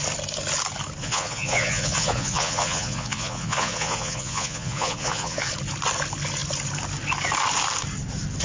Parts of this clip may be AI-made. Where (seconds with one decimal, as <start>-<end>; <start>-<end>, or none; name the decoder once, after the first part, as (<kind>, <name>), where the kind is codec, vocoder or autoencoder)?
1.0-5.5 (vocoder, Vocos)